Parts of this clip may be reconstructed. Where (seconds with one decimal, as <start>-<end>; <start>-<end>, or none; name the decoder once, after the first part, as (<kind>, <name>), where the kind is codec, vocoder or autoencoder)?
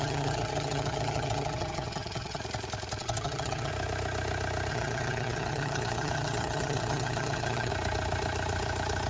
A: 0.0-2.4 (vocoder, HiFi-GAN); 3.0-3.7; 4.7-7.7